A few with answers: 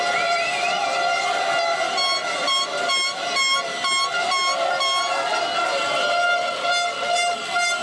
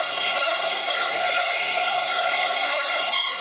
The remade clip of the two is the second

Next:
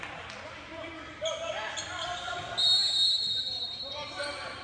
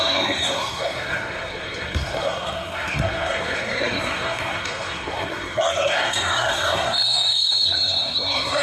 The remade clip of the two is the second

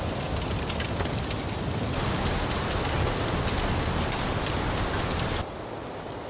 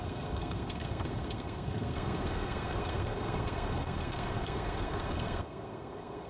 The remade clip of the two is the second